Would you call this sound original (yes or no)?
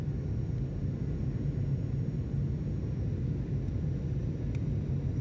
yes